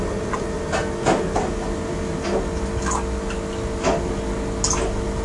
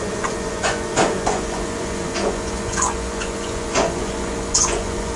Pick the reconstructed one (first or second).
second